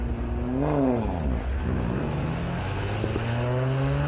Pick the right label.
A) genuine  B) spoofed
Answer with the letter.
A